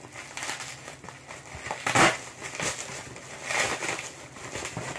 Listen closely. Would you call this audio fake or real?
real